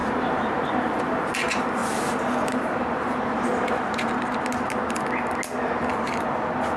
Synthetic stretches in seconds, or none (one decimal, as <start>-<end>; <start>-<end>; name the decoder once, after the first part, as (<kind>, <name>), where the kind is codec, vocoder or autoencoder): 0.0-1.3 (vocoder, BigVGAN v2); 1.8-3.4